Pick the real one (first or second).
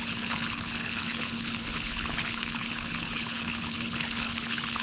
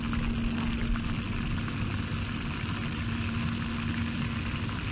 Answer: second